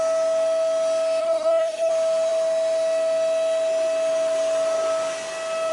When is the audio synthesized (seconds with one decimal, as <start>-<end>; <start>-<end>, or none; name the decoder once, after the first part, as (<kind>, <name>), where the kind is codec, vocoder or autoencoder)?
1.2-1.9 (codec, SNAC)